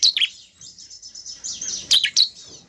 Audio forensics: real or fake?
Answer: fake